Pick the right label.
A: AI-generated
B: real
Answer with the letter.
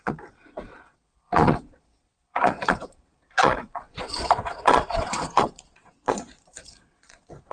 A